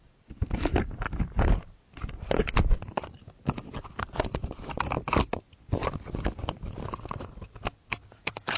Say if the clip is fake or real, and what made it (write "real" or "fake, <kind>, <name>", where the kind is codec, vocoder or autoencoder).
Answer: real